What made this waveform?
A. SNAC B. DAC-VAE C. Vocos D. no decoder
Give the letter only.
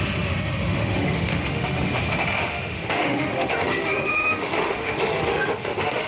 B